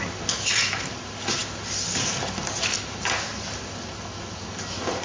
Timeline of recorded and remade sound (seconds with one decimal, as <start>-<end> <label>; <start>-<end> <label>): 0.0-5.0 recorded